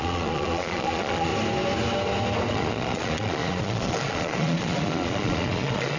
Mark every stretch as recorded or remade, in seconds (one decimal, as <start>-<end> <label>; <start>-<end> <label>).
0.0-1.3 remade; 1.3-2.5 recorded; 2.5-6.0 remade